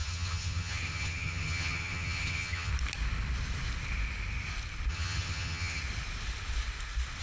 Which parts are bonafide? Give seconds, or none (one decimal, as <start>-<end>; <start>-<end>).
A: 2.7-4.9; 5.8-7.2